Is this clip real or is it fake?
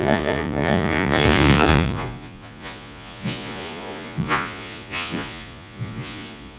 fake